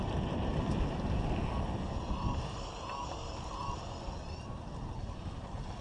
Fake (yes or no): no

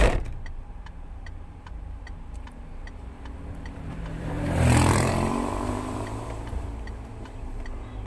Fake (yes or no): yes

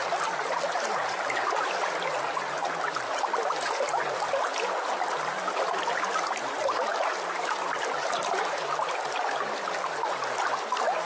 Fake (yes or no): no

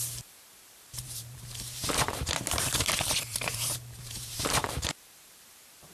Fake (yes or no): yes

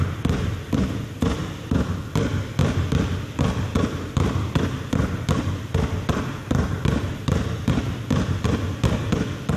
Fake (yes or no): yes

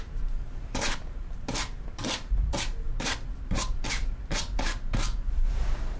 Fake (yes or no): yes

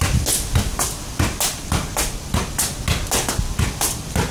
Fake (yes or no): no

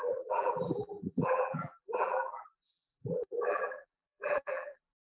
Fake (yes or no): yes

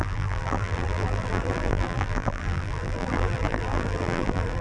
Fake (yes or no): yes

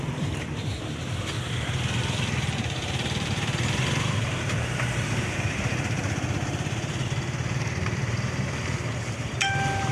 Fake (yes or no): yes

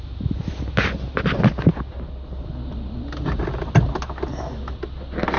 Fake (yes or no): no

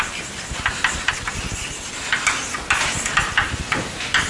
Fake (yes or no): no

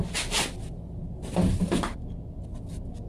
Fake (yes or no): no